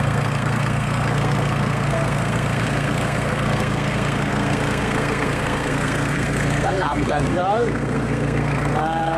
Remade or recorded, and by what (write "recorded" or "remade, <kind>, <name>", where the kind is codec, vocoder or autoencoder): remade, codec, SNAC